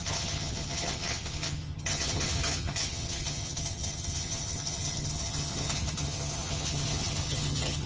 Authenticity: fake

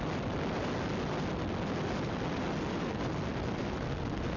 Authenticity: real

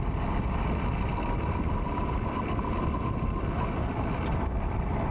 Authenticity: real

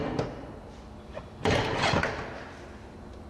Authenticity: real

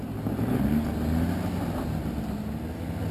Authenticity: real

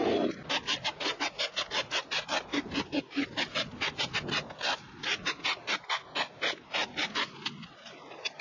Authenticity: real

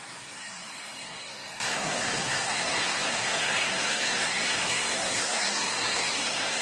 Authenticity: fake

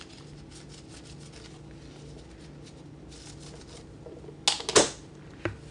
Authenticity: real